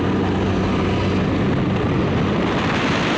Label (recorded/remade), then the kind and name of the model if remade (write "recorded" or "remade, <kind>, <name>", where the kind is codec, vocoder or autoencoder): recorded